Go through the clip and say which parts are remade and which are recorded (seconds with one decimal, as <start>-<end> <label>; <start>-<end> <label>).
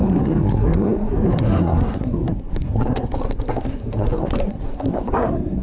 0.0-5.6 remade